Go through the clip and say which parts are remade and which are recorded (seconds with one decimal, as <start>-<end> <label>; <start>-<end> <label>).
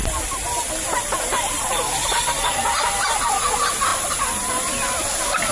0.0-2.8 remade; 2.8-3.9 recorded; 3.9-4.5 remade; 4.5-5.5 recorded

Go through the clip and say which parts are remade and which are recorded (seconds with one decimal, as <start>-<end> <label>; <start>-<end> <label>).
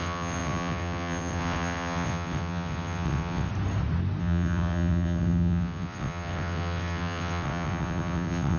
0.0-3.5 remade; 3.5-4.2 recorded; 4.2-8.6 remade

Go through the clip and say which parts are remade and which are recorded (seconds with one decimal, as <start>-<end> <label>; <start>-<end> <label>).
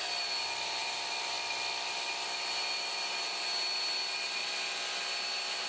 0.0-5.7 recorded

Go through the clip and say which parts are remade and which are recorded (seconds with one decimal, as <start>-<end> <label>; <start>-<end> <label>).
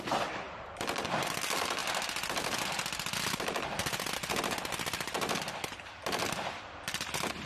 0.0-7.5 remade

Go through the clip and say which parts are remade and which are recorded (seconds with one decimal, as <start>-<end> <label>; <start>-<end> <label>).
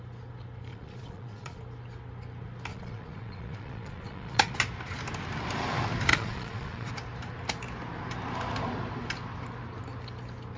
0.0-0.7 recorded; 0.7-1.6 remade; 1.6-2.7 recorded; 2.7-4.6 remade; 4.6-6.1 recorded; 6.1-6.9 remade; 6.9-10.6 recorded